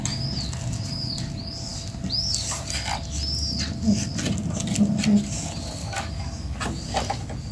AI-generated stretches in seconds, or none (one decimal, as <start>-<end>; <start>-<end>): 5.8-6.6